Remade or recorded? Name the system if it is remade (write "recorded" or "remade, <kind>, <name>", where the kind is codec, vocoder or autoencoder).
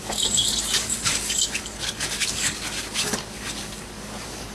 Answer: remade, codec, DAC